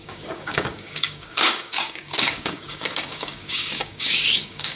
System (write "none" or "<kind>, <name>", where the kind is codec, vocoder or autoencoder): codec, DAC